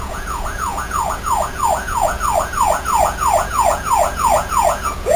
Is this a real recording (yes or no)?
no